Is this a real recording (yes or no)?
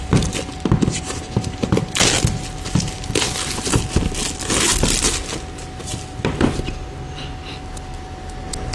yes